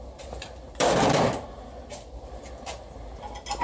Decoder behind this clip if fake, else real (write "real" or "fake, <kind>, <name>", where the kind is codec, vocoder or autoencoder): real